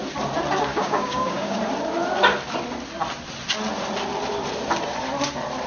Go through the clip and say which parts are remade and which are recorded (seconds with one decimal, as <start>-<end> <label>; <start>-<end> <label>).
0.0-0.7 recorded; 0.7-1.6 remade; 1.6-5.7 recorded